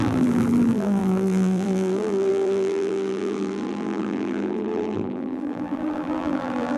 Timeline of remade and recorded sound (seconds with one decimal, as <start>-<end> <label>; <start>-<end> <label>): 0.0-6.8 remade